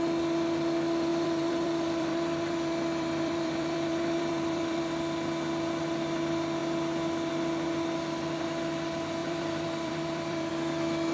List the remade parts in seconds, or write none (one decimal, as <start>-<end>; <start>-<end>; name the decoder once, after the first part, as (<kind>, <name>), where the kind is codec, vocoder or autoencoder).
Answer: 1.1-4.8 (vocoder, BigVGAN v2); 9.2-10.5